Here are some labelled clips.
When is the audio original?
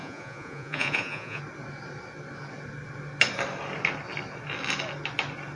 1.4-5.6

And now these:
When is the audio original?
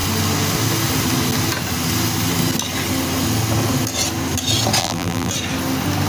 0.0-4.8; 5.3-6.1